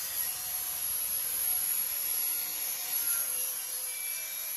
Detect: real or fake fake